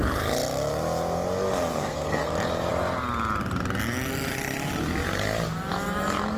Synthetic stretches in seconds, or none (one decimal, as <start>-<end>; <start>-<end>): 1.7-2.3